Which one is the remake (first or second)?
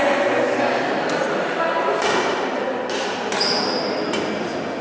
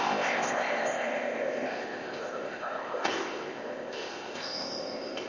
second